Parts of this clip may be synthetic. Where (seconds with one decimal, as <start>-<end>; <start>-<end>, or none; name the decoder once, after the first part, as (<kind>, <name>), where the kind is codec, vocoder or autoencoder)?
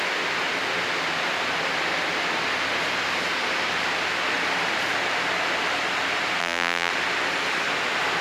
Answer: 6.4-6.9 (vocoder, BigVGAN v2)